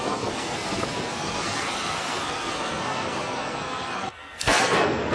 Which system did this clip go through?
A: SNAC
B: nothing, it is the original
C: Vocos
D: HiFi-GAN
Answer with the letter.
A